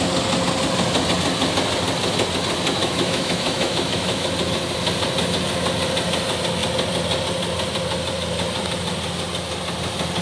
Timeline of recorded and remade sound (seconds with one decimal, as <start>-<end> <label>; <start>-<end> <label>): 0.0-2.8 recorded; 2.8-4.3 remade; 4.3-10.2 recorded

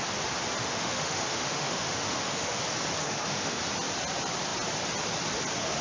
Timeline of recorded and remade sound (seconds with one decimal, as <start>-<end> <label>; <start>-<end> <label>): 0.0-0.6 recorded; 0.6-2.6 remade; 2.6-3.0 recorded; 3.0-3.6 remade; 3.6-5.8 recorded